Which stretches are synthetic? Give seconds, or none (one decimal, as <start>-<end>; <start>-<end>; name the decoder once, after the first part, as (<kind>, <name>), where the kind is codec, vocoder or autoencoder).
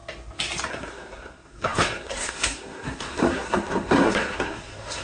0.7-5.0 (codec, SNAC)